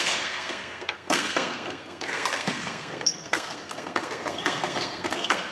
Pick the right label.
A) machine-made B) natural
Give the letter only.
A